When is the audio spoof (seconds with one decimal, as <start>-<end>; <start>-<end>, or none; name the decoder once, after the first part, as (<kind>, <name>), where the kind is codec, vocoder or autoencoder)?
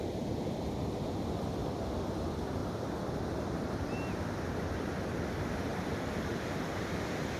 none